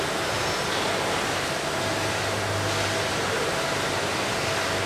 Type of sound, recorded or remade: recorded